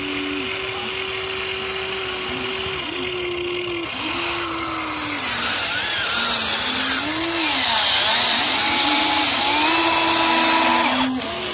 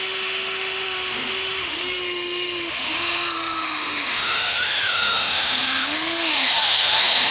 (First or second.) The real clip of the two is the first